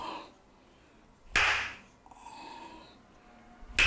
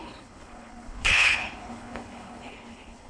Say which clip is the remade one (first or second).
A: second